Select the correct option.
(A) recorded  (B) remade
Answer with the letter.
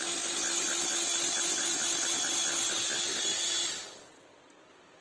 A